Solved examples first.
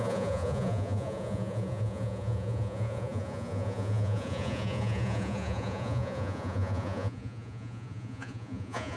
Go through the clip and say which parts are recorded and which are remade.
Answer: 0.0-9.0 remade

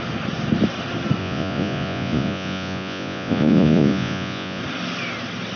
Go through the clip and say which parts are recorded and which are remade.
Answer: 0.0-1.2 recorded; 1.2-4.6 remade; 4.6-5.6 recorded

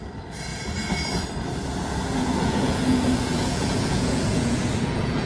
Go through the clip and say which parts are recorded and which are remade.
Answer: 0.0-2.2 recorded; 2.2-5.3 remade

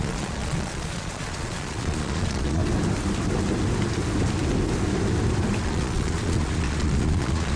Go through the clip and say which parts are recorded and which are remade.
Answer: 0.0-2.6 remade; 2.6-5.6 recorded; 5.6-7.6 remade

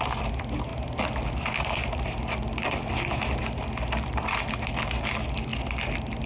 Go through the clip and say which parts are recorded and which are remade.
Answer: 0.0-6.3 recorded

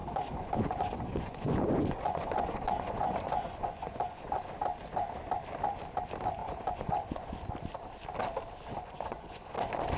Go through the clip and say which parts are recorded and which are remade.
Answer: 0.0-4.4 remade; 4.4-6.4 recorded; 6.4-7.4 remade; 7.4-8.7 recorded; 8.7-9.5 remade; 9.5-10.0 recorded

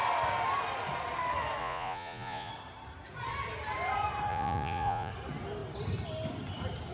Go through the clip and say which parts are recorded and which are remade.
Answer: 0.0-1.6 recorded; 1.6-2.5 remade; 2.5-4.3 recorded; 4.3-5.1 remade; 5.1-6.9 recorded

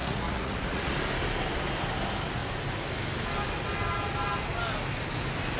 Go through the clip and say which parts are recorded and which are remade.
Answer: 0.0-0.9 remade; 0.9-5.6 recorded